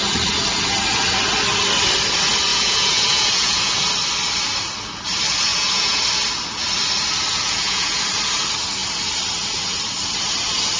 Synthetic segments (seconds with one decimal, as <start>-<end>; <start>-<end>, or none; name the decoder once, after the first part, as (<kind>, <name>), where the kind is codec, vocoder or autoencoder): 2.5-3.9 (vocoder, Vocos); 5.5-6.0; 7.3-8.0